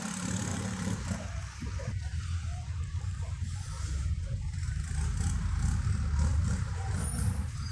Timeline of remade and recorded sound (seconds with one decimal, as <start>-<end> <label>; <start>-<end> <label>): 0.0-0.5 recorded; 0.5-4.9 remade; 4.9-6.3 recorded; 6.3-6.9 remade; 6.9-7.7 recorded